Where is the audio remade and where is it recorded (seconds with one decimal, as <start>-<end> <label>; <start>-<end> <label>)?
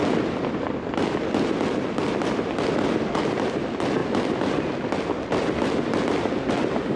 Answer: 0.0-7.0 recorded